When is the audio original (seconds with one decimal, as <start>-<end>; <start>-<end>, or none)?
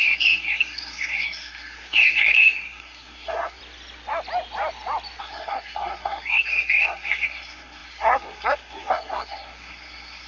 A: 3.6-5.2